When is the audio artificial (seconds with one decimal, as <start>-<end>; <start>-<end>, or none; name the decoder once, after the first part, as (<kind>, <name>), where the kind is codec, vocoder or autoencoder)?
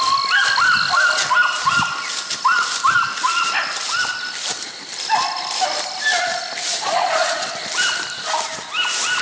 6.7-7.5 (vocoder, Vocos)